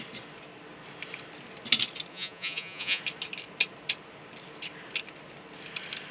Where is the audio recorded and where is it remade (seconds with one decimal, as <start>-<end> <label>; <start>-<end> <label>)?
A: 0.0-2.1 recorded; 2.1-3.0 remade; 3.0-6.1 recorded